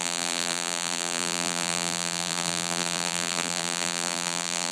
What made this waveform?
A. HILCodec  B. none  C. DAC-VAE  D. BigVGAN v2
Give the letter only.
D